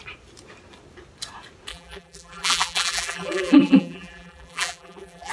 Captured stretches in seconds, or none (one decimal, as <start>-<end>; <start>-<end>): 0.0-1.7